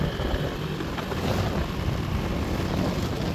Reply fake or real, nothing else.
real